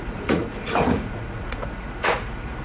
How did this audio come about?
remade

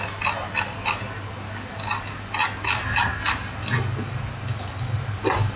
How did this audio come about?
recorded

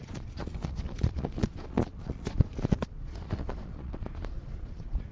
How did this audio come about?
remade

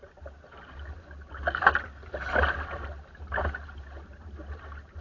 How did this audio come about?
recorded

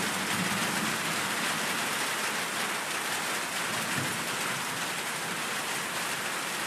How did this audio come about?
recorded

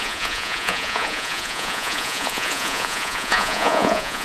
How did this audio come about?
remade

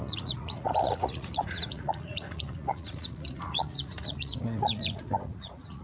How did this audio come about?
remade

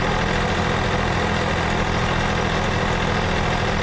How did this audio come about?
recorded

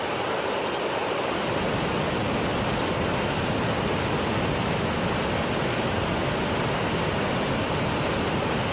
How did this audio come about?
recorded